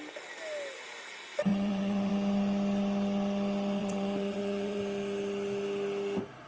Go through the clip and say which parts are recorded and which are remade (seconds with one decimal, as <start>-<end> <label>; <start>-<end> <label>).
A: 0.0-1.5 recorded; 1.5-2.1 remade; 2.1-3.8 recorded; 3.8-4.8 remade; 4.8-6.5 recorded